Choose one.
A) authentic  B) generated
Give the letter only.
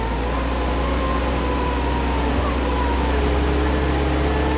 A